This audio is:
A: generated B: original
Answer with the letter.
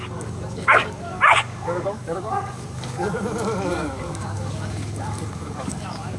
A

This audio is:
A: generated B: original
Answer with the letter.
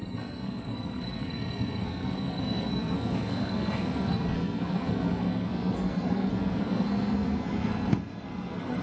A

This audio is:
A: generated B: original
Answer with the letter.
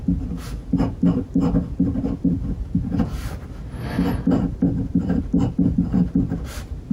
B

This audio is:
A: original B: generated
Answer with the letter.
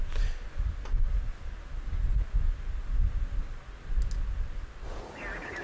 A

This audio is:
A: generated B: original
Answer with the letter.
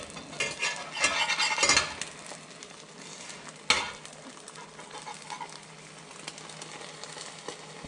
B